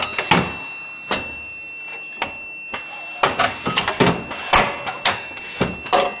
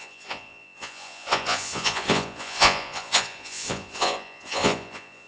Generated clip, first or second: second